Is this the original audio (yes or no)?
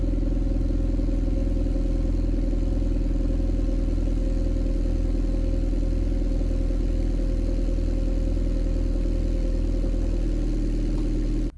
yes